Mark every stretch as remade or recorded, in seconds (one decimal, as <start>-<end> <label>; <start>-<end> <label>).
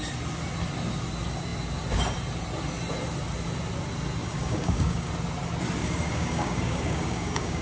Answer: 0.0-4.2 recorded; 4.2-5.1 remade; 5.1-5.8 recorded; 5.8-7.6 remade